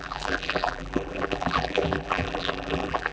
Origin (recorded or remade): remade